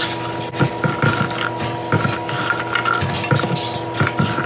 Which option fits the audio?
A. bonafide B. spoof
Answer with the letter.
A